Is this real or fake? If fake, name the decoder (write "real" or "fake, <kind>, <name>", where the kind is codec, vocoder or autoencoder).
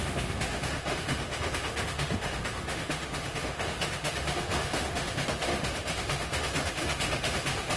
fake, autoencoder, DAC-VAE